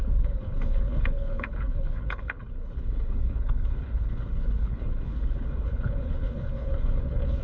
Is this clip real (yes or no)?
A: no